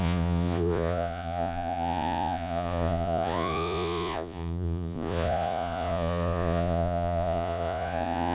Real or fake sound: fake